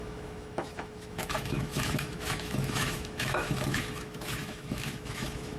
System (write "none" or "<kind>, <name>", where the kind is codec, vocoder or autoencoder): autoencoder, DAC-VAE